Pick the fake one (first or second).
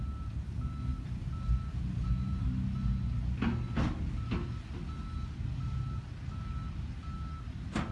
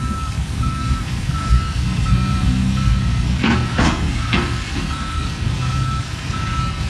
second